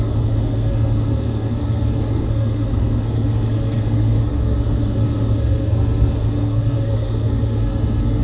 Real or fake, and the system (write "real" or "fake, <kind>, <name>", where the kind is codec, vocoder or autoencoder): fake, codec, SNAC